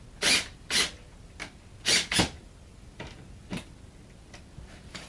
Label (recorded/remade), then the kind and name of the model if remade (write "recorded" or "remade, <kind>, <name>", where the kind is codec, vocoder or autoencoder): recorded